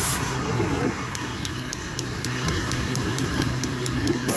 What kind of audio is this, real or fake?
fake